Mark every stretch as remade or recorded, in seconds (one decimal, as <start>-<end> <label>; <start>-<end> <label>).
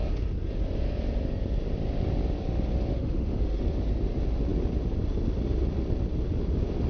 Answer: 0.0-2.9 recorded; 2.9-3.6 remade; 3.6-6.9 recorded